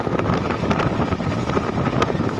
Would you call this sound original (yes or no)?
no